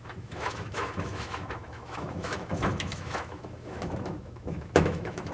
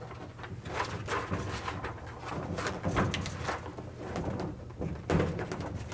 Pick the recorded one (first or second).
second